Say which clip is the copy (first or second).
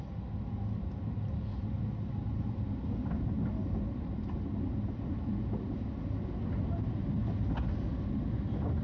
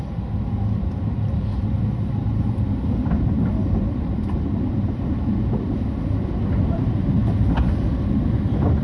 second